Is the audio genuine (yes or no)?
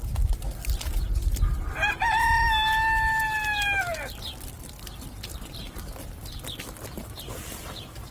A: yes